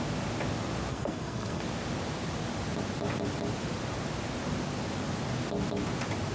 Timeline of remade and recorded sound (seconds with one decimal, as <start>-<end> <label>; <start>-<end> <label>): 0.0-0.9 recorded; 0.9-1.6 remade; 1.6-6.3 recorded